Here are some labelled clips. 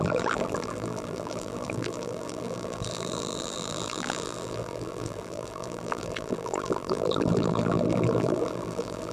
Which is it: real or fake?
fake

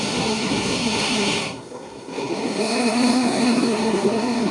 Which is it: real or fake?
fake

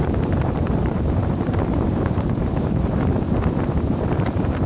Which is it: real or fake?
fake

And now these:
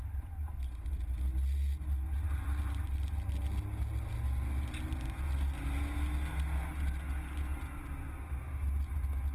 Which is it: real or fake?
real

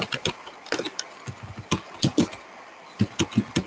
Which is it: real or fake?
real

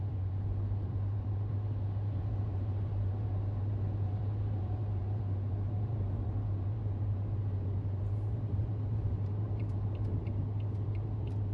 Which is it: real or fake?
fake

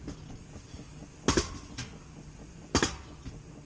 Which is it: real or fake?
real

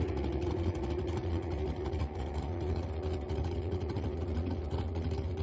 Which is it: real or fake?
fake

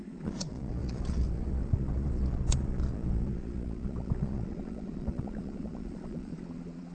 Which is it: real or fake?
fake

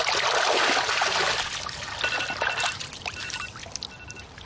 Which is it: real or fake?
real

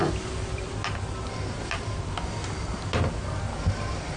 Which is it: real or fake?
real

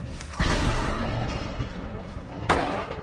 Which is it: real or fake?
fake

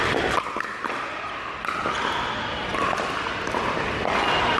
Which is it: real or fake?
real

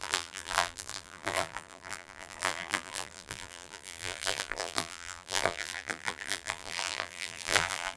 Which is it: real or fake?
fake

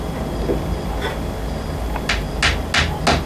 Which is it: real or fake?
real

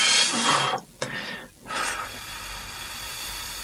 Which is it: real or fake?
real